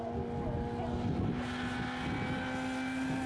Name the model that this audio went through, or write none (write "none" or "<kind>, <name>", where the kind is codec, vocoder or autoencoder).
none